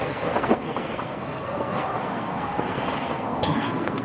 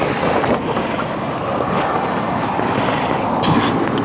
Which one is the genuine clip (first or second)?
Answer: second